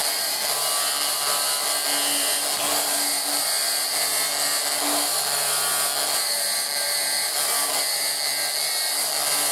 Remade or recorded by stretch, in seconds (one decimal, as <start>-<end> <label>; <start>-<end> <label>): 0.0-9.5 recorded